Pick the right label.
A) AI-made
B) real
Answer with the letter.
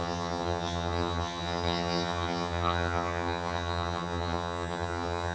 A